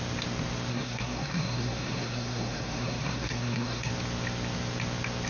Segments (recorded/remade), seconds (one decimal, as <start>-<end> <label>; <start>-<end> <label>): 0.0-0.7 recorded; 0.7-3.9 remade; 3.9-5.3 recorded